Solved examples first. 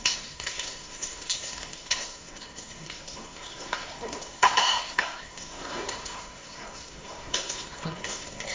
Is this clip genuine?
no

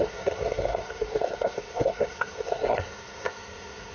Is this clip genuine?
no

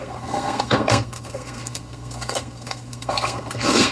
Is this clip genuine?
no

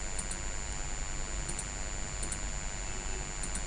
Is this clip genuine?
yes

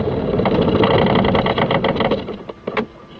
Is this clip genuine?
yes